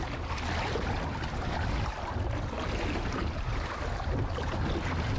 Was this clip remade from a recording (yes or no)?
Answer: no